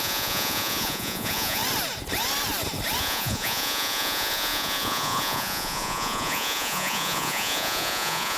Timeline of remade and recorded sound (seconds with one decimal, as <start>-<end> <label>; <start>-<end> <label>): 0.0-1.6 remade; 1.6-3.0 recorded; 3.0-8.4 remade